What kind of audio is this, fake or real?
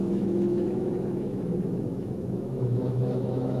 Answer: fake